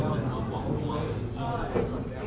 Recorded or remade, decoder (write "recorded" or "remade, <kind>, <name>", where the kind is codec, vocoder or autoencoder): recorded